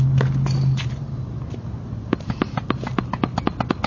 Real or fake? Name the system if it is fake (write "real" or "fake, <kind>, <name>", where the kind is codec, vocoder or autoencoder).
real